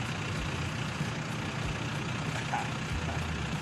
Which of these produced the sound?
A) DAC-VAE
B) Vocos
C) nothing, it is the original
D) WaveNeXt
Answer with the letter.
C